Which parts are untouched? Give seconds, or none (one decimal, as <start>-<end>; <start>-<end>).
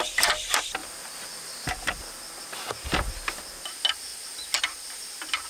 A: 0.0-5.5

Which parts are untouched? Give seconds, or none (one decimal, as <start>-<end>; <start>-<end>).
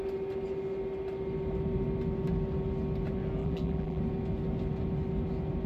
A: 0.0-3.4; 4.0-5.7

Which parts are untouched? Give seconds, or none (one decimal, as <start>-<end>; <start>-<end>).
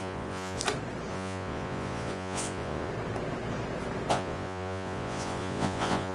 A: 0.6-1.1; 2.9-4.1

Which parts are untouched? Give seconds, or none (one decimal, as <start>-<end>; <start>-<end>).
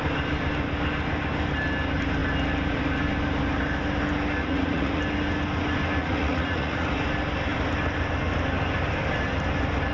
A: 0.0-4.4; 5.0-6.0; 6.9-9.9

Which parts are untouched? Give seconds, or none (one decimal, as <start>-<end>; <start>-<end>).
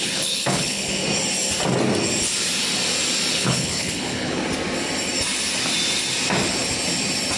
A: 1.0-3.3; 4.4-7.4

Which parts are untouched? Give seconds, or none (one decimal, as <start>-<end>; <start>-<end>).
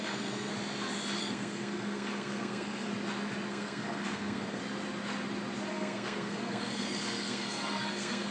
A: 0.5-1.2; 2.9-3.5; 4.6-5.7